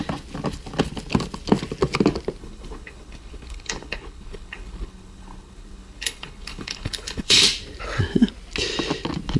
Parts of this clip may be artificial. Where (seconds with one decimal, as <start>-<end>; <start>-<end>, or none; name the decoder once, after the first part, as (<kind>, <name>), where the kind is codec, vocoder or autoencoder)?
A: 2.4-7.4 (codec, HILCodec)